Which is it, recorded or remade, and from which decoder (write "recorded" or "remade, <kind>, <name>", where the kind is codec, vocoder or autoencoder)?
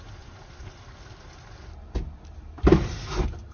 recorded